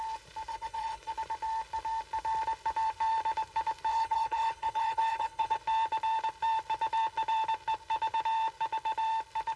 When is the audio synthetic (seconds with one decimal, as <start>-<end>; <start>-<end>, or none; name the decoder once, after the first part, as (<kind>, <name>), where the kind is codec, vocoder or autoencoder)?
0.5-1.1 (codec, HILCodec); 3.9-5.6